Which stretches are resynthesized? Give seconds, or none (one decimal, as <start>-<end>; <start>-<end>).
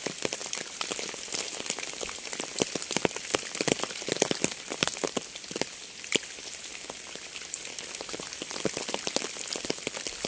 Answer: none